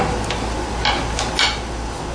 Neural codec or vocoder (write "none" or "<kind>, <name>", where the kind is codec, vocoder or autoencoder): none